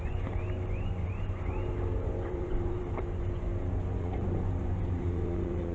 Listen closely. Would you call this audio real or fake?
fake